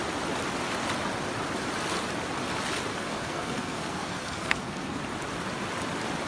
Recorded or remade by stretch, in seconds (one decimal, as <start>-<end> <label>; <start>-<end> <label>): 0.0-2.9 recorded; 2.9-5.0 remade; 5.0-6.3 recorded